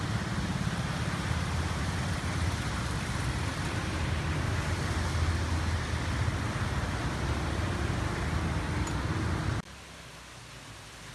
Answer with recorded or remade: recorded